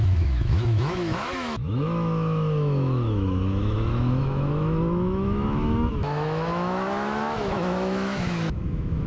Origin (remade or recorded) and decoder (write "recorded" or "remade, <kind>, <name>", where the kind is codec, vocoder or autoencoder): remade, autoencoder, DAC-VAE